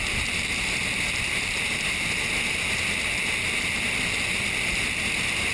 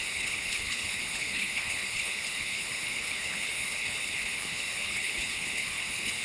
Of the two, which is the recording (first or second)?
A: first